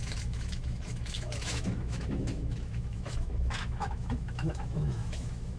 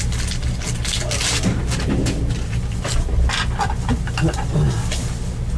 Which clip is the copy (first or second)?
first